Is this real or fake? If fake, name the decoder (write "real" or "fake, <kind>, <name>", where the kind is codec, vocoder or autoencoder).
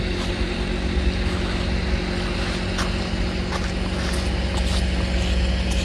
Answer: real